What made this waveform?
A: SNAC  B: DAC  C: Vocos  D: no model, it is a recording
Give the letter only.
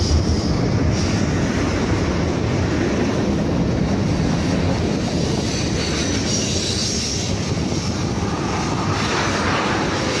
D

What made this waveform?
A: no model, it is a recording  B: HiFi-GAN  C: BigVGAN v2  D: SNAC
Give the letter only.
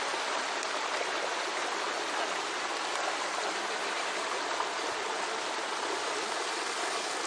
A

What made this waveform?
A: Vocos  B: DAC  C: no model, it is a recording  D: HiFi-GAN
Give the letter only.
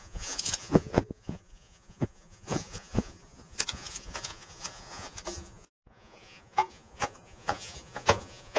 A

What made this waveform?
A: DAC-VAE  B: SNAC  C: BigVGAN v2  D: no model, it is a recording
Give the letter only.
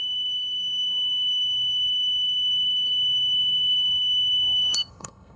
B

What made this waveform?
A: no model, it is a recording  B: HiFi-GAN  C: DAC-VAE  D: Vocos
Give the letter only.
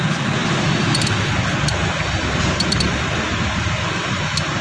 A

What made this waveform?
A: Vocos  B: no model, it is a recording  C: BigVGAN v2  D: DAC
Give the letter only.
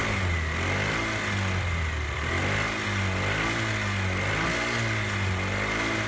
B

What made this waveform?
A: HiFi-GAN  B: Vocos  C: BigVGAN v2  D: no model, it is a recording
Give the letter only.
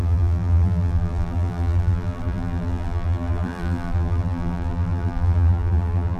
C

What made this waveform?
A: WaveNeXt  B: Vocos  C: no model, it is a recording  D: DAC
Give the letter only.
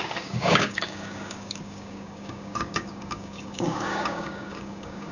D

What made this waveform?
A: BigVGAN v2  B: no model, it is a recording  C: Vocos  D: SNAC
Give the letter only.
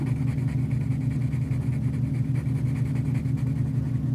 B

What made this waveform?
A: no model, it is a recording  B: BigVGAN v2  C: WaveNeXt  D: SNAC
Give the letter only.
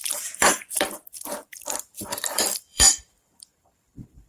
B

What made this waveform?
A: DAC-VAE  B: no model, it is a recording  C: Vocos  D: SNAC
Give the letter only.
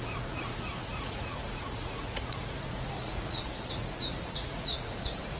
C